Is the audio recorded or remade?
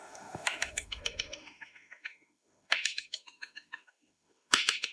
remade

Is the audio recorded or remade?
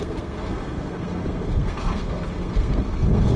remade